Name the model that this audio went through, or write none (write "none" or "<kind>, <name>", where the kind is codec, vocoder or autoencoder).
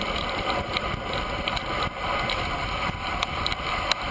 none